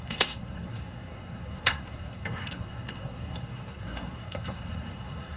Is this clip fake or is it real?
fake